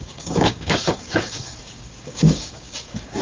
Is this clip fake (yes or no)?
yes